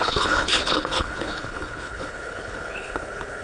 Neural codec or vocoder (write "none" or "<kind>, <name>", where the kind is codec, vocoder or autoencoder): codec, HILCodec